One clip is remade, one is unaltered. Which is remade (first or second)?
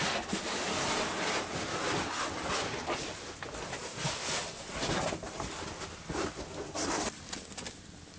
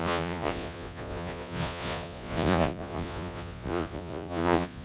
second